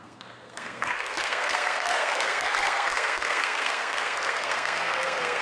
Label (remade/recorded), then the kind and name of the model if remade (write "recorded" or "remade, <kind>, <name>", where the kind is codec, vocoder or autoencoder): remade, codec, SNAC